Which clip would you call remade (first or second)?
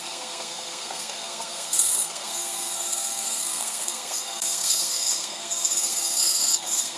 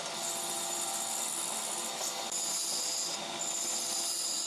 first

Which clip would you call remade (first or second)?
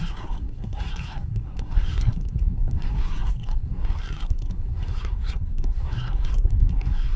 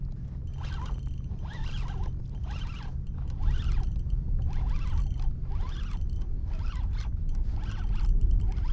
first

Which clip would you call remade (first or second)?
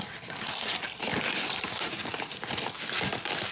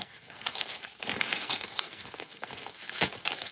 second